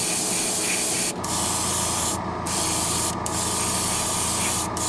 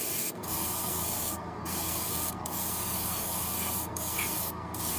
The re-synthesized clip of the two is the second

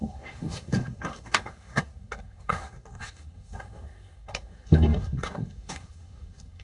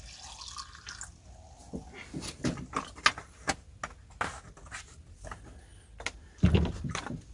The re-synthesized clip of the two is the first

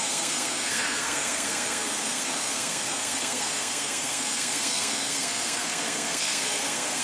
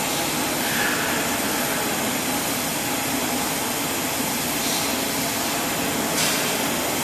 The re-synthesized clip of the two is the first